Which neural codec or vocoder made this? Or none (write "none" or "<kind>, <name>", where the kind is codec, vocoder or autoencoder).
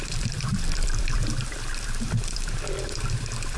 vocoder, BigVGAN v2